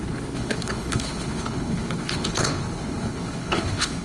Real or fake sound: fake